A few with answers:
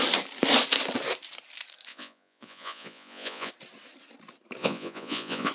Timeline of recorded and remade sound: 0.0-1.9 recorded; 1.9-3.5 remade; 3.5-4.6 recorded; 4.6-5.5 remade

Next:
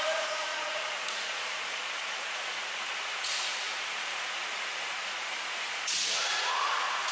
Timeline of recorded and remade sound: 0.0-7.1 remade

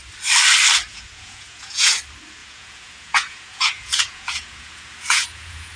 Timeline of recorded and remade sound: 0.0-0.9 recorded; 0.9-2.0 remade; 2.0-2.4 recorded; 2.4-5.8 remade

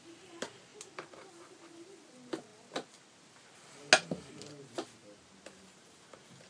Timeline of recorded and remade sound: 0.0-6.5 recorded